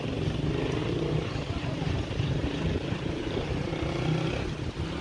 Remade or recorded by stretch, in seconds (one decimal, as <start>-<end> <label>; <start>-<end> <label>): 0.0-0.8 recorded; 0.8-3.7 remade; 3.7-5.0 recorded